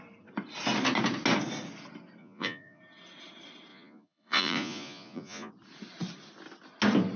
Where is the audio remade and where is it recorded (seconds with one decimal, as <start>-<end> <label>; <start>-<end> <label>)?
0.0-2.2 recorded; 2.2-2.8 remade; 2.8-3.7 recorded; 3.7-5.5 remade; 5.5-7.2 recorded